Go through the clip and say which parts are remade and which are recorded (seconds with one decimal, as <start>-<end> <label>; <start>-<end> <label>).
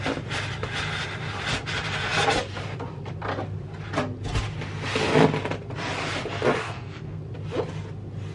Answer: 0.0-6.6 recorded; 6.6-7.2 remade; 7.2-8.3 recorded